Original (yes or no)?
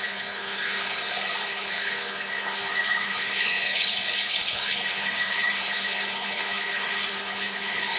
no